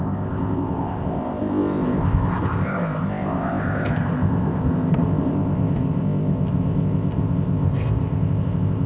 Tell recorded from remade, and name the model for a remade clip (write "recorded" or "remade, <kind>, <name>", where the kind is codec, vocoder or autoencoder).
remade, codec, ZipCodec